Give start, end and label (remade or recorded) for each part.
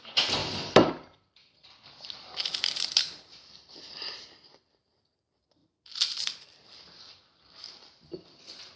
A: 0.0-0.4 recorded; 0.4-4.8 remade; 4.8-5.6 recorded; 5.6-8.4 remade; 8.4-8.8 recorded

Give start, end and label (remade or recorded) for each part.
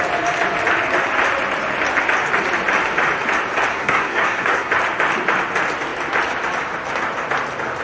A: 0.0-3.7 recorded; 3.7-4.7 remade; 4.7-7.8 recorded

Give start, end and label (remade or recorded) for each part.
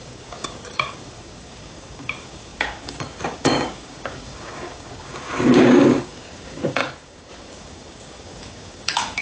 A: 0.0-9.2 remade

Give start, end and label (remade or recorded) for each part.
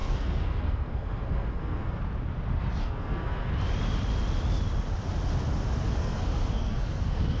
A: 0.0-2.0 remade; 2.0-2.8 recorded; 2.8-3.5 remade; 3.5-5.9 recorded; 5.9-7.4 remade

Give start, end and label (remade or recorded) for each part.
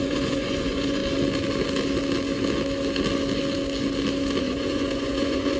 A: 0.0-1.0 remade; 1.0-4.4 recorded; 4.4-5.6 remade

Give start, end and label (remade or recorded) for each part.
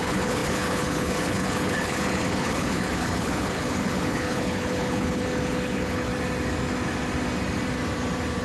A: 0.0-6.1 remade; 6.1-8.4 recorded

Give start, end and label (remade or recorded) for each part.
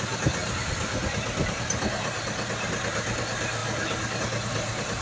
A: 0.0-5.0 recorded